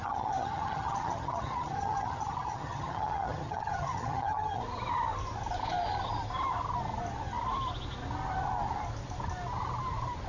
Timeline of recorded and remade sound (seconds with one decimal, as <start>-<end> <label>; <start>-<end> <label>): 0.0-4.6 remade; 4.6-10.3 recorded